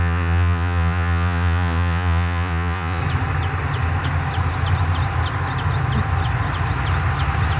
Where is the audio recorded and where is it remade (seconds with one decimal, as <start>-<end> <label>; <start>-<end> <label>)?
0.0-3.0 remade; 3.0-7.6 recorded